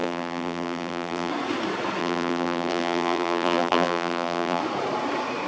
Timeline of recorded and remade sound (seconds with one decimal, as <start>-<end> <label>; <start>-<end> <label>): 0.0-1.3 remade; 1.3-2.0 recorded; 2.0-4.6 remade; 4.6-5.5 recorded